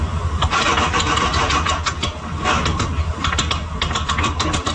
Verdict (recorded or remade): recorded